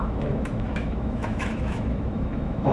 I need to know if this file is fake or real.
fake